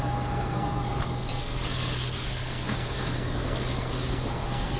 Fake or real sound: fake